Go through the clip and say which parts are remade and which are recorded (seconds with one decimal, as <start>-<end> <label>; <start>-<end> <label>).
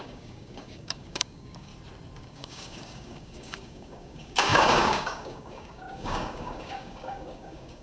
0.0-1.7 remade; 1.7-2.2 recorded; 2.2-7.8 remade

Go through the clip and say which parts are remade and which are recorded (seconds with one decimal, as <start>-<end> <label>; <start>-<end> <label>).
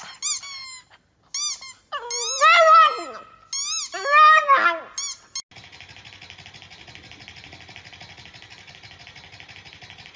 0.0-10.2 recorded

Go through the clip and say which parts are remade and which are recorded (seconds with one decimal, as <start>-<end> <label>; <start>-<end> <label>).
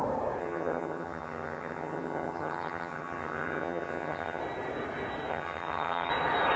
0.0-0.4 recorded; 0.4-4.4 remade; 4.4-5.3 recorded; 5.3-6.1 remade; 6.1-6.6 recorded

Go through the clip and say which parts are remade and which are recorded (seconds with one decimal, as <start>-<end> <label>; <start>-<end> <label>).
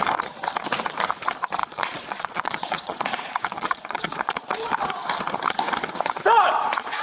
0.0-1.6 recorded; 1.6-4.7 remade; 4.7-7.0 recorded